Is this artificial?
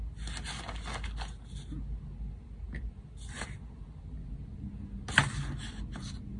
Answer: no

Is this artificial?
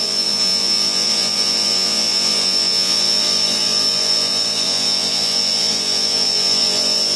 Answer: yes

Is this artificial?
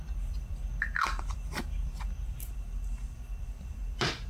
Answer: yes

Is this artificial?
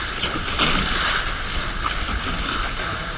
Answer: no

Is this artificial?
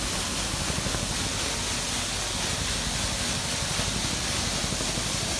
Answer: no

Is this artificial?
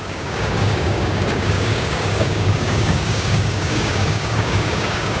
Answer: yes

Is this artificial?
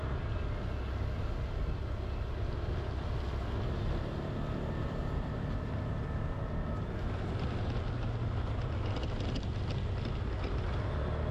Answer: no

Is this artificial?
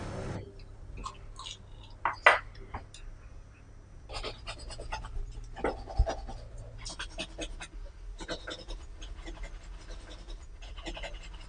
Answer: no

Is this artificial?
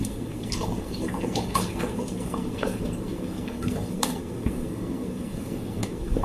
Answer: yes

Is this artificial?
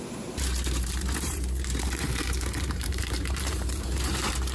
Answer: yes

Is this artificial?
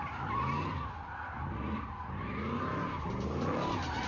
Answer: no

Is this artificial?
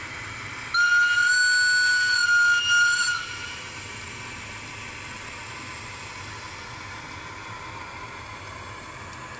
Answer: no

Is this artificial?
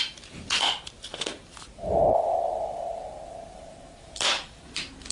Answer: yes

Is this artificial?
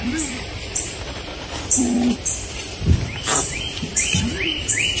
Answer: yes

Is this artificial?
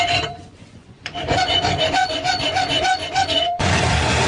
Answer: yes